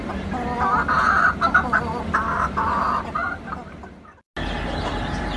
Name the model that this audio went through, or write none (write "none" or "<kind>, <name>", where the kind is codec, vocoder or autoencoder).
none